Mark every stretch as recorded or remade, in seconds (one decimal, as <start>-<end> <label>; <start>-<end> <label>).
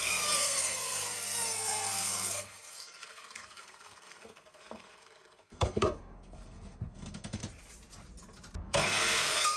0.0-7.4 remade; 7.4-8.6 recorded; 8.6-9.6 remade